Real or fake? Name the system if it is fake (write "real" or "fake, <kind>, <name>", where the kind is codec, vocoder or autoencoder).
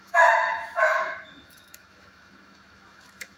fake, autoencoder, DAC-VAE